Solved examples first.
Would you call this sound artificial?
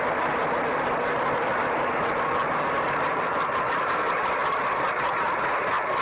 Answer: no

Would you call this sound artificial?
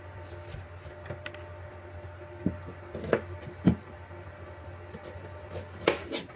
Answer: no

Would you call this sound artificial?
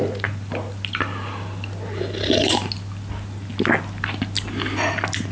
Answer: no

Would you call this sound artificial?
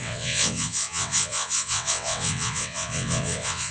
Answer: yes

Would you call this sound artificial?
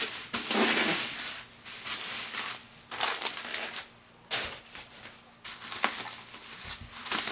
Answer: no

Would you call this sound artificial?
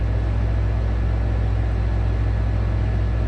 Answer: no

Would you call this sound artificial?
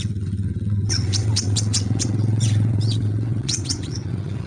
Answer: yes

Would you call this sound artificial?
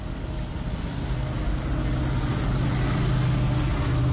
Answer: no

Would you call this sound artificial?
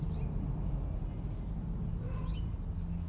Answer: no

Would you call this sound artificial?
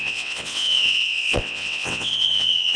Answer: yes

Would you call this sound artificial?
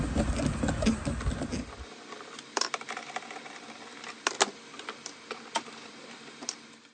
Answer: no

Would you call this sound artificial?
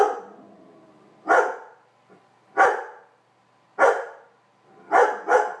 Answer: no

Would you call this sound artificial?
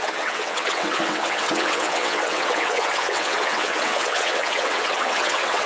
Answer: yes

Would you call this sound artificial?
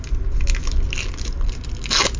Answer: no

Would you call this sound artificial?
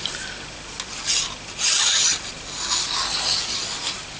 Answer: no